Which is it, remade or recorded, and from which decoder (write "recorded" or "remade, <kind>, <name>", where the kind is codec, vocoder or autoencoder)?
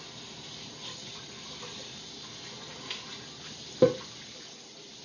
recorded